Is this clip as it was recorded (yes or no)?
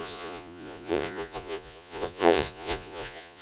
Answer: no